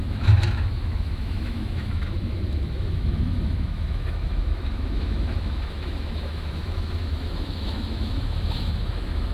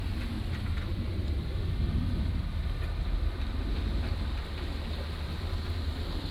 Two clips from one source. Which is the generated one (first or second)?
first